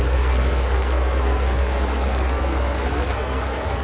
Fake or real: fake